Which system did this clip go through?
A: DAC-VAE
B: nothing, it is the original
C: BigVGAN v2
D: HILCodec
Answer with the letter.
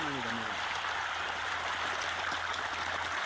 B